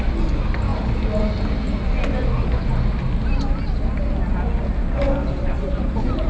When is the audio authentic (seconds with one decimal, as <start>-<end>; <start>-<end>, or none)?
0.0-6.3